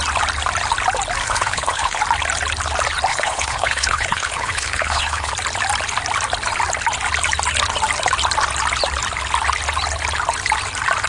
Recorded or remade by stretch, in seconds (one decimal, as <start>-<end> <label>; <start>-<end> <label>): 0.0-1.2 recorded; 1.2-2.0 remade; 2.0-3.1 recorded; 3.1-5.3 remade; 5.3-11.1 recorded